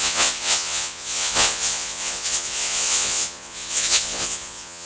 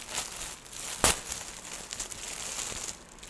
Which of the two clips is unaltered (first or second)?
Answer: second